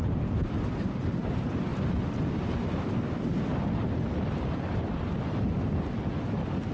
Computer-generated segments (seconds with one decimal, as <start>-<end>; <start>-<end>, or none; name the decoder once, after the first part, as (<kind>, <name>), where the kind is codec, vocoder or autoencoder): none